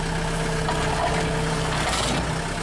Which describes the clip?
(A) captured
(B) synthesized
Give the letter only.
A